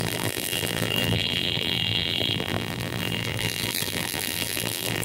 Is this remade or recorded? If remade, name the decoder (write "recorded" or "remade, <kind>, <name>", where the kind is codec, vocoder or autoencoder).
remade, vocoder, BigVGAN v2